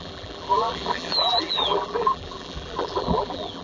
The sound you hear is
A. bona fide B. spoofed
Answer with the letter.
B